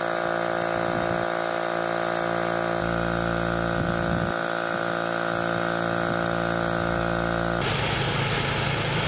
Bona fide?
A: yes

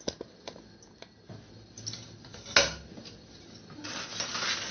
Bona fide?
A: yes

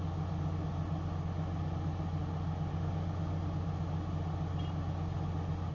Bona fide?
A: yes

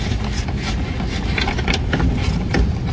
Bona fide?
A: yes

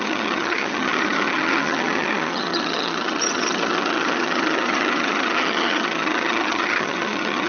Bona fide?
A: no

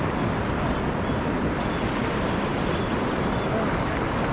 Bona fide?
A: yes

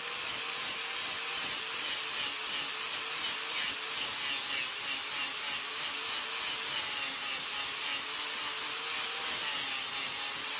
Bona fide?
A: yes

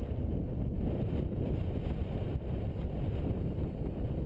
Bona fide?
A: yes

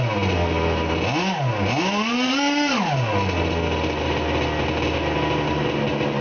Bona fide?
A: yes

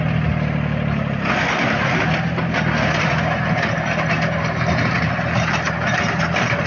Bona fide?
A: yes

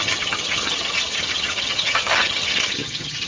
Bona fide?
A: no